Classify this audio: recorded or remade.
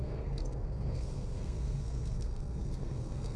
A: remade